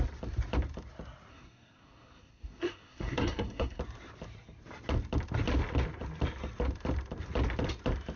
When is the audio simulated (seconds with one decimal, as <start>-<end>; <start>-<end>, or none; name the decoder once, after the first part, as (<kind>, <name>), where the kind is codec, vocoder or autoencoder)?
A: 1.3-3.8 (codec, SNAC)